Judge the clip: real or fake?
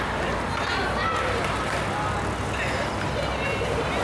real